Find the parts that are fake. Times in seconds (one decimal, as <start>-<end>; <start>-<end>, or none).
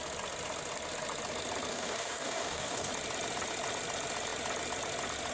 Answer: 1.7-2.9